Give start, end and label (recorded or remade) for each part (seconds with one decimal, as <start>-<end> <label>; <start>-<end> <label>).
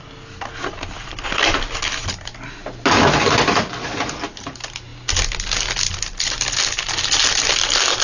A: 0.0-8.0 recorded